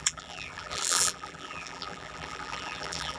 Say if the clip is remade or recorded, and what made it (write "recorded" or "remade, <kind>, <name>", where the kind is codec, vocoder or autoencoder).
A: remade, vocoder, BigVGAN v2